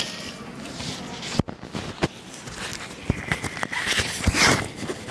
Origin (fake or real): real